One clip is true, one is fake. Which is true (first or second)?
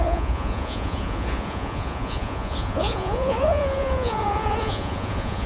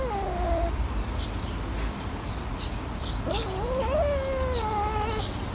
second